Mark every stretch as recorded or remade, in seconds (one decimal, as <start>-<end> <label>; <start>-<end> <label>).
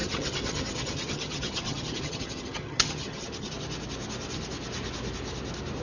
0.0-3.5 remade; 3.5-5.8 recorded